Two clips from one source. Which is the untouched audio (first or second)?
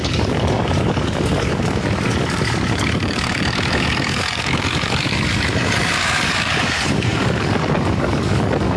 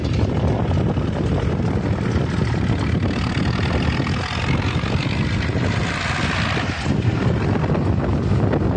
second